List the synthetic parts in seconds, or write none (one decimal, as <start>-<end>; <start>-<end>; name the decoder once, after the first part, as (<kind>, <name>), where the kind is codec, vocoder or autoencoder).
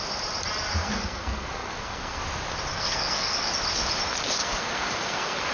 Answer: 0.8-2.2 (codec, SNAC); 2.7-3.5; 4.4-5.5